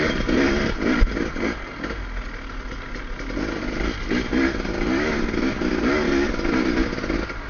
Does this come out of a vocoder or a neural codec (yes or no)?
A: no